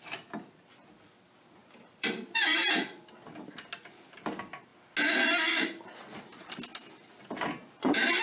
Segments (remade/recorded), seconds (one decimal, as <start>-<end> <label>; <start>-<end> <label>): 0.0-1.6 recorded; 1.6-3.1 remade; 3.1-8.2 recorded